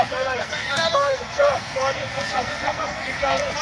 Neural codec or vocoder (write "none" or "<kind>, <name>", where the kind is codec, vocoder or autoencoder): codec, SNAC